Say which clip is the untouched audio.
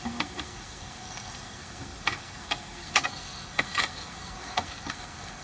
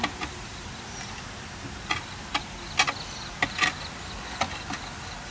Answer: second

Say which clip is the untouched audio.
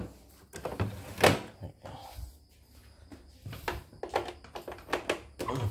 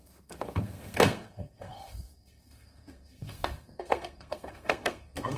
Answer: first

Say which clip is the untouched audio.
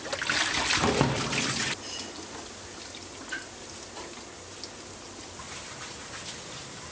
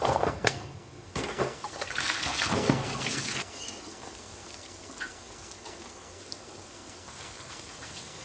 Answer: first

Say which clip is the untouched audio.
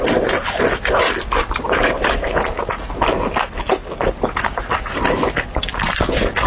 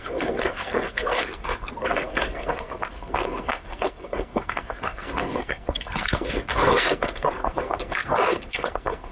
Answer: first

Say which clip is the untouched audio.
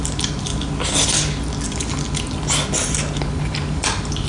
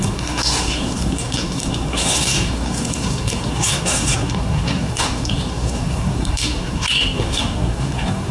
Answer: first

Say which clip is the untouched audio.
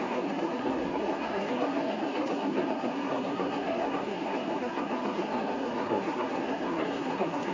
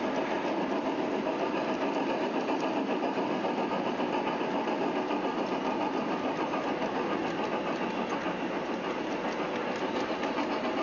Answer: second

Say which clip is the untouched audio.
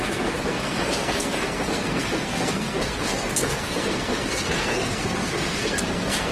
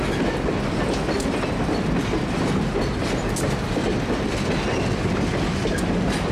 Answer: second